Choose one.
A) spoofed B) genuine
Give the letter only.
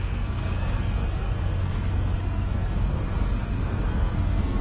A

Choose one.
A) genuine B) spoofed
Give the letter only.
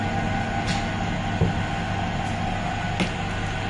A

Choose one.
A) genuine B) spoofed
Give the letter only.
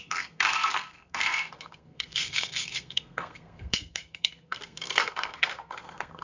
B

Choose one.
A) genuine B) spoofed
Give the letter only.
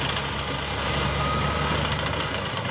A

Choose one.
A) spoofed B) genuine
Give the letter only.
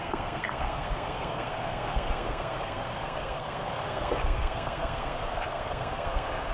A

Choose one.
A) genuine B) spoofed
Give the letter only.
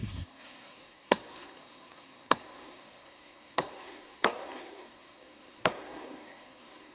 B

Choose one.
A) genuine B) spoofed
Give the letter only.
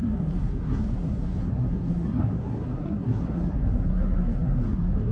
B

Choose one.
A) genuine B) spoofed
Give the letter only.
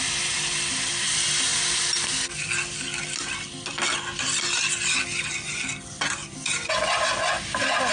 A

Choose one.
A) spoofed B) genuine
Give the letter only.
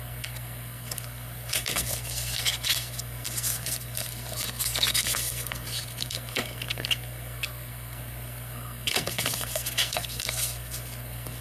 A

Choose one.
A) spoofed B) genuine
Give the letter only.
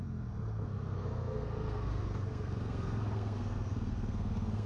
A